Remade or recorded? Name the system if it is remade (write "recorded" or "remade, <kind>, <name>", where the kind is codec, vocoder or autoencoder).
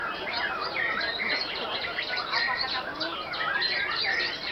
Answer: recorded